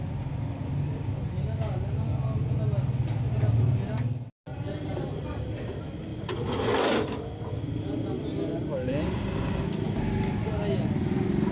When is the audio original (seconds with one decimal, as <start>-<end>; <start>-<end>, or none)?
0.0-4.5; 5.0-6.1; 6.9-11.5